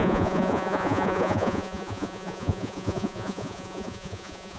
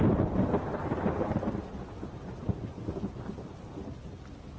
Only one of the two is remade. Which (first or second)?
first